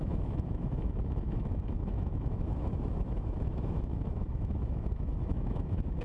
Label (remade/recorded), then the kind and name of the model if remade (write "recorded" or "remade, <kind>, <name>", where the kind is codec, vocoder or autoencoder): remade, autoencoder, DAC-VAE